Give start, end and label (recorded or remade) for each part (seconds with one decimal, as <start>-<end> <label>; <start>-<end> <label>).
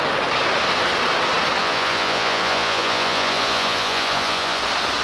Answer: 0.0-1.6 recorded; 1.6-4.6 remade; 4.6-5.0 recorded